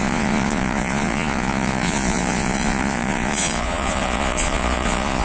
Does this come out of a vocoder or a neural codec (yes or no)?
yes